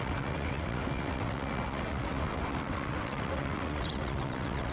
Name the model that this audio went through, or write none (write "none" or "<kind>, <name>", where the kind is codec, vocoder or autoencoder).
vocoder, WaveNeXt